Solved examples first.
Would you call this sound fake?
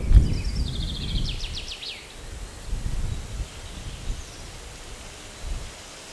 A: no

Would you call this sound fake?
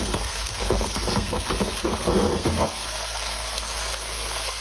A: yes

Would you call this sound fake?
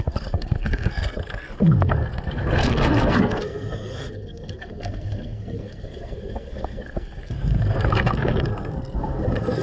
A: yes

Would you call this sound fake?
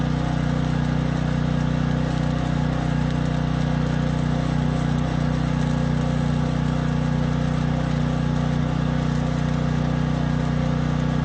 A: no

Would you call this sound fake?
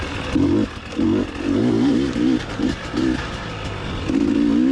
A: no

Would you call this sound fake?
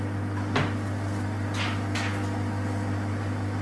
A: no